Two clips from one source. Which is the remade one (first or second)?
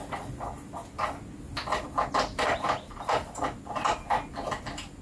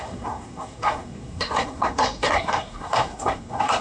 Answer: second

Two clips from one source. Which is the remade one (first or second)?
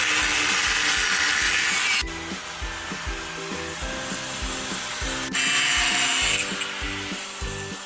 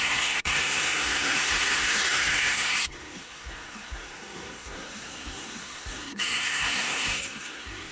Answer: second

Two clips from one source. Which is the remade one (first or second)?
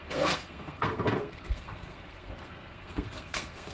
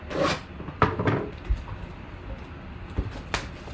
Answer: first